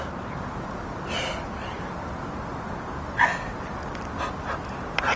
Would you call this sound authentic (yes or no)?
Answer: yes